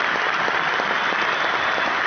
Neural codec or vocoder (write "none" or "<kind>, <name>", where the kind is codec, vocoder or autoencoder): none